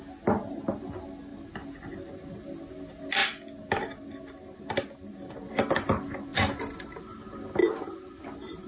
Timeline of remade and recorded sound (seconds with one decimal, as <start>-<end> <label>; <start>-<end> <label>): 0.0-8.7 recorded